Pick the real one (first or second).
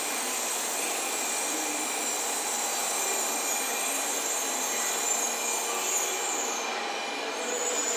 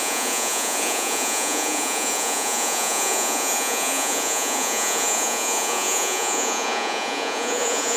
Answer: first